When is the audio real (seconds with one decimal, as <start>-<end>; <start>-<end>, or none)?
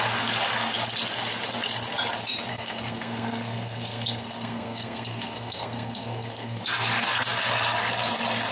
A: 0.0-2.5; 6.6-8.5